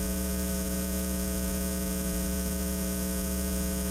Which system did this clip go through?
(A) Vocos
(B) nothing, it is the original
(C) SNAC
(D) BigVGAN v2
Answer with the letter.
A